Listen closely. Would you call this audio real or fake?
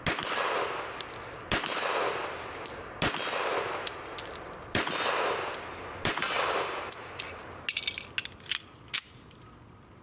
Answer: real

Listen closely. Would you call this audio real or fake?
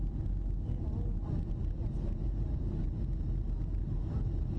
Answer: real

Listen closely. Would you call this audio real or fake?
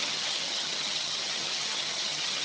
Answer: fake